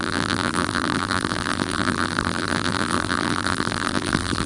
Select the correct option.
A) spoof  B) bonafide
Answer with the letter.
A